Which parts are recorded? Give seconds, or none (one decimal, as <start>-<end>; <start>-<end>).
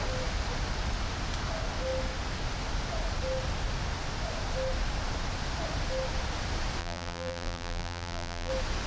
0.0-6.8; 8.5-8.9